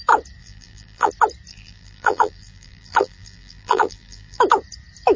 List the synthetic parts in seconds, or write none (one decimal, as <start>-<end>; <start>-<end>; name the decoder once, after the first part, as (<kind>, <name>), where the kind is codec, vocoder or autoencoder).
0.4-1.1 (vocoder, BigVGAN v2); 1.5-4.4